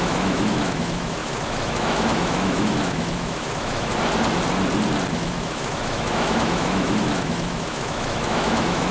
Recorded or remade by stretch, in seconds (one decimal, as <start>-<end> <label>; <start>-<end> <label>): 0.0-3.9 remade; 3.9-5.1 recorded; 5.1-8.9 remade

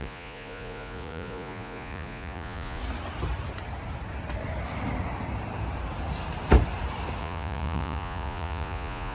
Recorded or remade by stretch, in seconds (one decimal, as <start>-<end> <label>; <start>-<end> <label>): 0.0-2.8 remade; 2.8-7.2 recorded; 7.2-9.1 remade

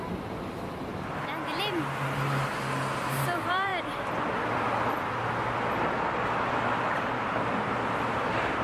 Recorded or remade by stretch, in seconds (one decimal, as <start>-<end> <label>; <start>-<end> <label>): 0.0-0.9 remade; 0.9-3.1 recorded; 3.1-3.7 remade; 3.7-8.1 recorded; 8.1-8.6 remade

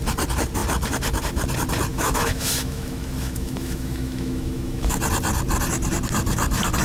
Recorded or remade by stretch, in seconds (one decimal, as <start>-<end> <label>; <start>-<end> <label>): 0.0-1.9 recorded; 1.9-5.0 remade; 5.0-6.8 recorded

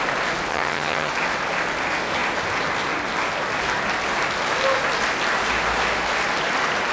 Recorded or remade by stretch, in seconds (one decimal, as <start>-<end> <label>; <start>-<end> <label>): 0.0-0.5 recorded; 0.5-1.1 remade; 1.1-6.9 recorded